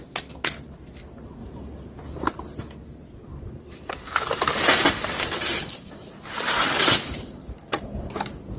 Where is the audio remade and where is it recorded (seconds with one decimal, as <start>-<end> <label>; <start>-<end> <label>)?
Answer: 0.0-1.4 recorded; 1.4-2.6 remade; 2.6-3.3 recorded; 3.3-8.1 remade; 8.1-8.6 recorded